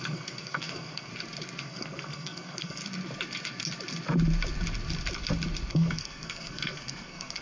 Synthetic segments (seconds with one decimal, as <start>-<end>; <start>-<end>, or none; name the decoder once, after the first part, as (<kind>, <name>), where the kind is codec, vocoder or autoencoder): 0.0-1.1 (codec, SNAC); 1.6-2.8; 5.7-7.4